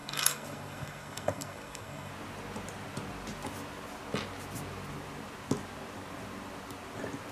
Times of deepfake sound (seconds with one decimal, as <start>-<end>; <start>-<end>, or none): 0.0-2.1